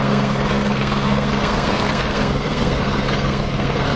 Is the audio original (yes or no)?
no